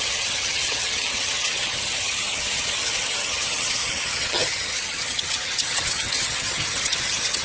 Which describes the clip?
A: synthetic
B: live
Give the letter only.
A